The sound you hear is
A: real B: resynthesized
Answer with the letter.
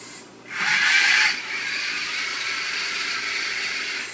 A